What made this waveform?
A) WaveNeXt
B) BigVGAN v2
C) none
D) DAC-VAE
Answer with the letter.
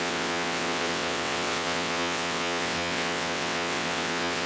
A